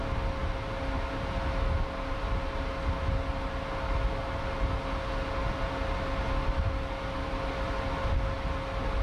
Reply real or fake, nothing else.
real